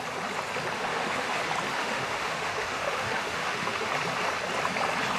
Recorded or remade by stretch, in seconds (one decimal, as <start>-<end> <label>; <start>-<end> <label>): 0.0-0.9 recorded; 0.9-1.4 remade; 1.4-1.8 recorded; 1.8-3.9 remade; 3.9-5.2 recorded